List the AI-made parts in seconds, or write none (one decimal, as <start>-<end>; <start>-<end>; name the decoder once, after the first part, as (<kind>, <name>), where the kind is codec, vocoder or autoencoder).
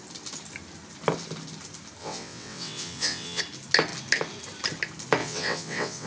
2.0-3.4 (vocoder, WaveNeXt); 5.2-6.1